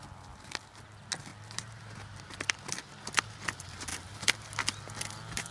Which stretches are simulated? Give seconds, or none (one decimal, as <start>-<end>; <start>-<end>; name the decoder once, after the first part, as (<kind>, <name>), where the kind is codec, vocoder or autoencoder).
none